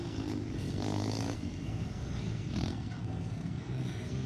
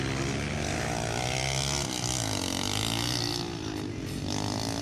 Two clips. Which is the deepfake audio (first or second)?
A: first